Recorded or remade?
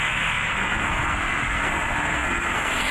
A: remade